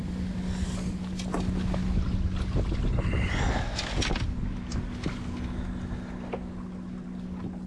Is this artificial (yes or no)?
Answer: no